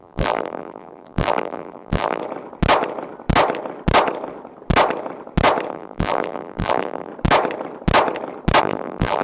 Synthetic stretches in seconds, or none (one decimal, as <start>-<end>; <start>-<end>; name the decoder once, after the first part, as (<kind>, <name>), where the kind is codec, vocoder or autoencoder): 0.0-2.2 (vocoder, BigVGAN v2); 5.7-7.1; 8.6-9.2